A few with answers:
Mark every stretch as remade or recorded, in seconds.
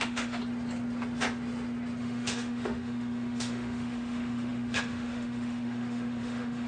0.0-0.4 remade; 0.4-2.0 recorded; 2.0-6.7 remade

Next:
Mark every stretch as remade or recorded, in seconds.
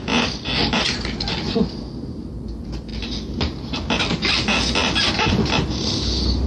0.0-6.5 recorded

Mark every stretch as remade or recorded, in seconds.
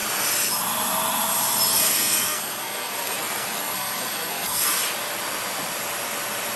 0.0-1.7 recorded; 1.7-4.7 remade; 4.7-6.6 recorded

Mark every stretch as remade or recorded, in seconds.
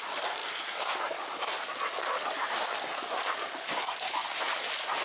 0.0-5.0 recorded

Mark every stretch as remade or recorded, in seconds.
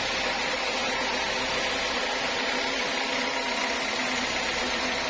0.0-5.1 recorded